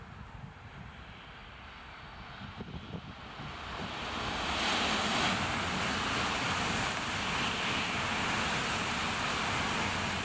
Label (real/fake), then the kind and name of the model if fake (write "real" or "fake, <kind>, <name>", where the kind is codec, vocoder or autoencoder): real